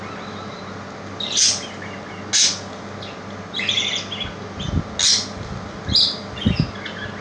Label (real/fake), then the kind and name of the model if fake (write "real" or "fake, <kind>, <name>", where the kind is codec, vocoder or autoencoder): real